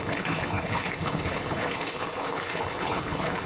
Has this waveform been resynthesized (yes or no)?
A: yes